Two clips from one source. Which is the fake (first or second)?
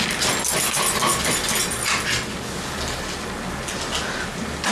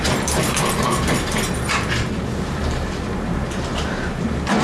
second